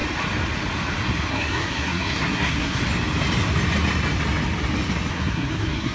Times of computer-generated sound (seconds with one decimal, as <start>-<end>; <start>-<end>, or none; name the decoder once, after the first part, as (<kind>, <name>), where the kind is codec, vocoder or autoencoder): 1.3-2.8 (codec, SNAC); 5.1-5.9